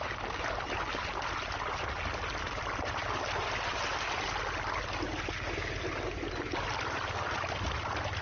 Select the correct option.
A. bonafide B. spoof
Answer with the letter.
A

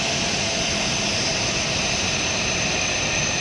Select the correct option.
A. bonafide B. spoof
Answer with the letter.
A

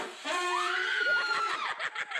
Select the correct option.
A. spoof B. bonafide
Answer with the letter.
A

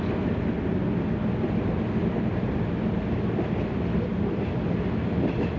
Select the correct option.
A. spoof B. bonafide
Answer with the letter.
B